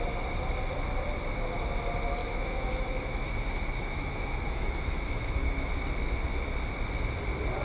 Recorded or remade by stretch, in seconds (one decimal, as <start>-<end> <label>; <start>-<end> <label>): 0.0-2.2 recorded; 2.2-5.7 remade; 5.7-7.6 recorded